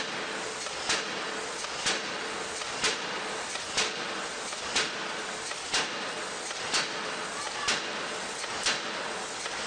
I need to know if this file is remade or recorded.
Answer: recorded